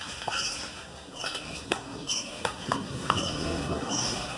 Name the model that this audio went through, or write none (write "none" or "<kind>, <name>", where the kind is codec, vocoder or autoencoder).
codec, SNAC